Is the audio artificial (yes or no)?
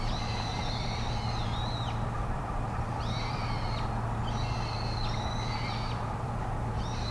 no